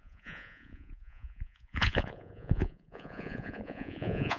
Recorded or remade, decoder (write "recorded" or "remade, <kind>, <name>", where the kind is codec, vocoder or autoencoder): remade, vocoder, Vocos